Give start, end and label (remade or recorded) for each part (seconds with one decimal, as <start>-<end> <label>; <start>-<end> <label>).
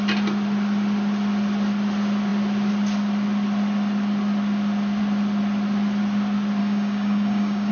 0.0-6.6 recorded; 6.6-7.7 remade